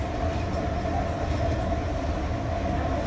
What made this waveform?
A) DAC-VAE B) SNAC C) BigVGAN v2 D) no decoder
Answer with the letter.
D